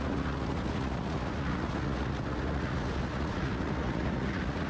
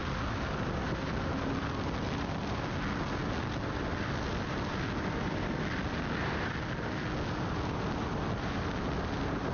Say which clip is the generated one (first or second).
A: first